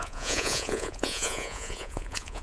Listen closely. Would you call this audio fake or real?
fake